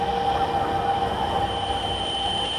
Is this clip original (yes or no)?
yes